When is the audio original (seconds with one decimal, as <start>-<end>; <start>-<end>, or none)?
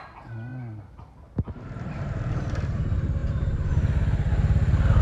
0.0-5.0